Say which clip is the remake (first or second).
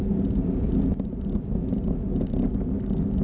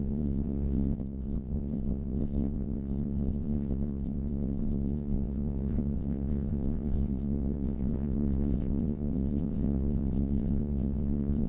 second